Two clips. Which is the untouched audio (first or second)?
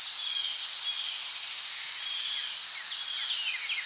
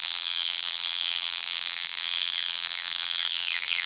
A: first